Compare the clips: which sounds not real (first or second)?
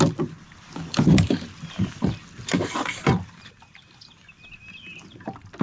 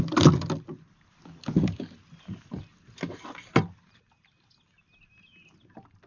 first